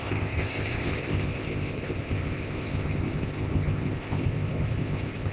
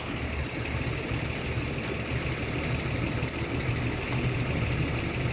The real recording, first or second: second